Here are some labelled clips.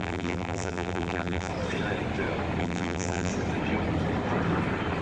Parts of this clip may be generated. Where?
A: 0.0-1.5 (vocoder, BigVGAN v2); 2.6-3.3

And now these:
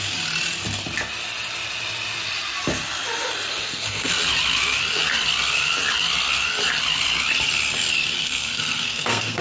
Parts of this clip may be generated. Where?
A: 3.5-4.1 (codec, SNAC); 8.2-9.4

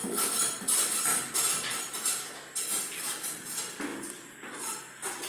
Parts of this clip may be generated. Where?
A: 1.1-2.7 (vocoder, BigVGAN v2); 3.9-5.3

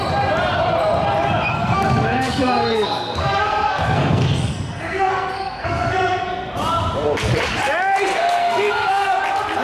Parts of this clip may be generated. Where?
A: 1.5-6.2 (codec, SNAC); 8.1-9.2

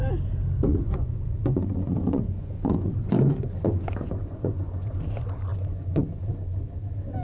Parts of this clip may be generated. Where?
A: 0.7-5.0 (vocoder, Vocos); 5.5-6.2

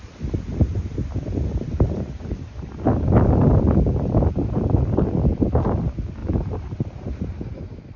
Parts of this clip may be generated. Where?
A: 6.2-6.8 (vocoder, BigVGAN v2)